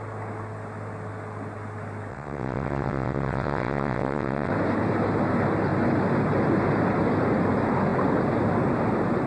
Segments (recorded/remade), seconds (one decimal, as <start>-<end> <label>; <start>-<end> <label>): 0.0-2.1 recorded; 2.1-4.5 remade; 4.5-9.3 recorded